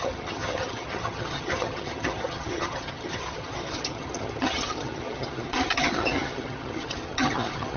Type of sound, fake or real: fake